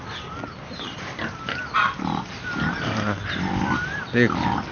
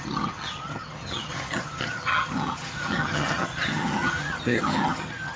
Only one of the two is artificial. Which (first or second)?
second